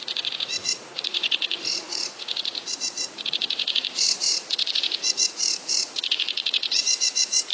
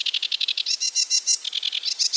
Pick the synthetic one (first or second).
first